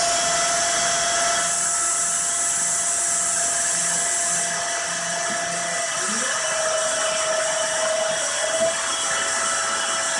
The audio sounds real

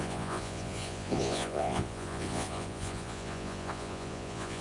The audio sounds fake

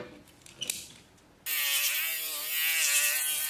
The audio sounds real